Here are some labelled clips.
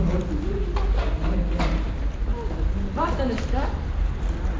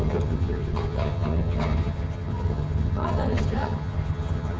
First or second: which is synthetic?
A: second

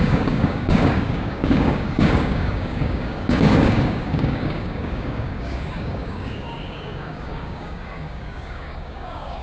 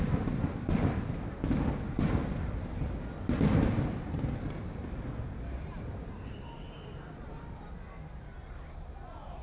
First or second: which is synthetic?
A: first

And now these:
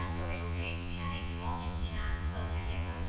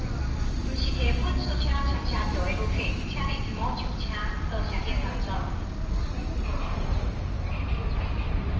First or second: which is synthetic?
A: first